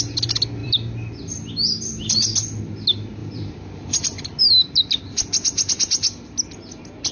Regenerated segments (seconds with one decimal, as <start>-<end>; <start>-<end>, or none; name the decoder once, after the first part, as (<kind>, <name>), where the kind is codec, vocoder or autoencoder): 0.6-1.5 (vocoder, BigVGAN v2); 3.2-4.4